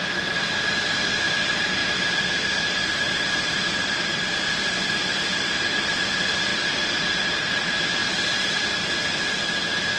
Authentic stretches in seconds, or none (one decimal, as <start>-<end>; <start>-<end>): 0.0-10.0